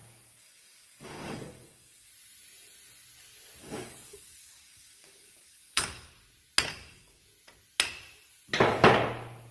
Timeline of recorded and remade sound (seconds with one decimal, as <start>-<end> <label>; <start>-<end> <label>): 0.0-2.1 remade; 2.1-3.6 recorded; 3.6-6.1 remade; 6.1-6.7 recorded; 6.7-7.2 remade; 7.2-9.5 recorded

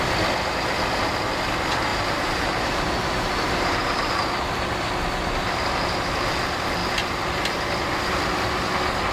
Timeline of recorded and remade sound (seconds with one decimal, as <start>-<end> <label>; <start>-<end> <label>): 0.0-1.9 recorded; 1.9-4.1 remade; 4.1-9.1 recorded